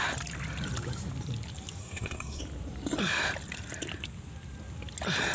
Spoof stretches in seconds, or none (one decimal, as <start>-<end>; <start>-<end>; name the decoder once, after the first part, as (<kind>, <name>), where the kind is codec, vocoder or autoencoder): 1.8-2.4 (codec, SNAC)